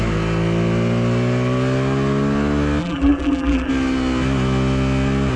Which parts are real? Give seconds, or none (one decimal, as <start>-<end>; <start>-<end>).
0.0-2.8; 3.7-5.4